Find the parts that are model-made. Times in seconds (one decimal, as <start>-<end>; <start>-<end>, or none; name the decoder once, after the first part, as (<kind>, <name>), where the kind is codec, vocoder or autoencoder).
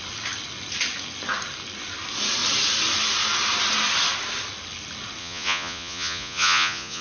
5.2-7.0 (vocoder, Vocos)